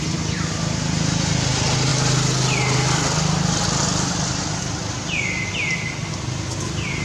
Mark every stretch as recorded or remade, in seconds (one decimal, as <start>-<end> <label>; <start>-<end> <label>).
0.0-7.0 recorded